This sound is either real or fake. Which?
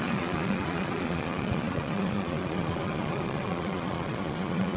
fake